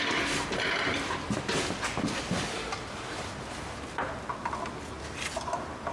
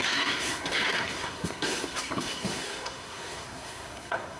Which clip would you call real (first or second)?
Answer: first